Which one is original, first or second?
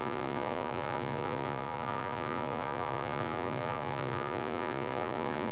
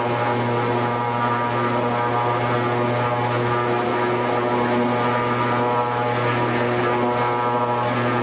second